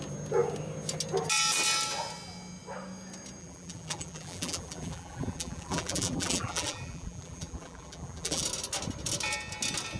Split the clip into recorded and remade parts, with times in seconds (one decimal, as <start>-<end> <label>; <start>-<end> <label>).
0.0-3.4 recorded; 3.4-8.4 remade; 8.4-10.0 recorded